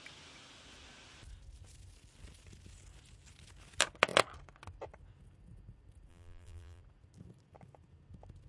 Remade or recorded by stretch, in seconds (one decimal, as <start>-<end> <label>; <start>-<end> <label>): 0.0-6.1 recorded; 6.1-6.8 remade; 6.8-8.5 recorded